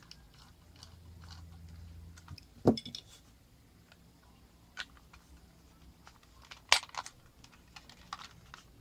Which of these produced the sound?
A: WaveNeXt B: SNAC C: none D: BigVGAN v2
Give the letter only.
C